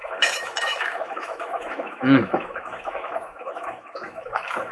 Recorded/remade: remade